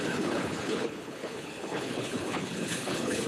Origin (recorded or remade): remade